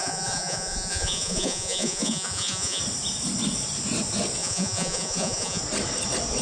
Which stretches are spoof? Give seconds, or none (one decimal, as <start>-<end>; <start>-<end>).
0.0-2.8; 4.4-5.6